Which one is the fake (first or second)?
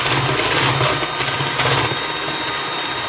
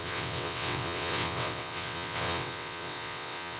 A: second